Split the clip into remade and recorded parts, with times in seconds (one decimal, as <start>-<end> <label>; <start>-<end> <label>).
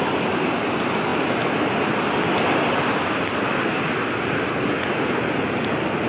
0.0-6.1 recorded